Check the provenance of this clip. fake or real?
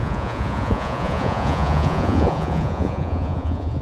fake